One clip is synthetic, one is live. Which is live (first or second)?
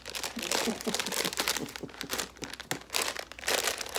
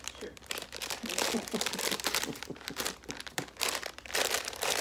first